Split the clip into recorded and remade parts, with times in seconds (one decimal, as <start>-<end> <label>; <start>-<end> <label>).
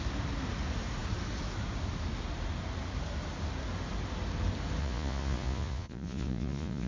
0.0-4.8 recorded; 4.8-6.9 remade